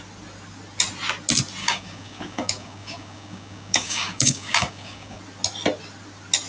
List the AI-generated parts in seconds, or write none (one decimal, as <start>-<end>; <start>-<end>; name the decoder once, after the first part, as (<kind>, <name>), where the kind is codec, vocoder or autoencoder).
1.6-5.2 (codec, DAC)